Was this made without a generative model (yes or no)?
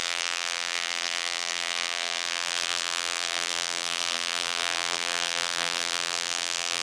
no